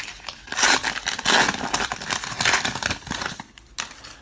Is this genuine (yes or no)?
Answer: yes